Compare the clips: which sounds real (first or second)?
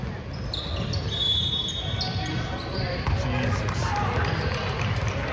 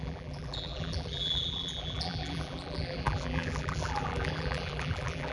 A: first